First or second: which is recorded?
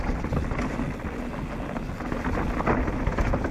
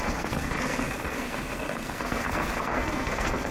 first